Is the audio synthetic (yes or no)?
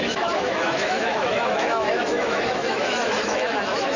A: yes